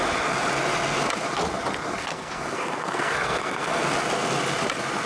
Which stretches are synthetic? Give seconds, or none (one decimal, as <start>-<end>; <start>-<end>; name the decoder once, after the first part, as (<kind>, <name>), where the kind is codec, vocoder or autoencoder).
2.0-3.8 (codec, SNAC)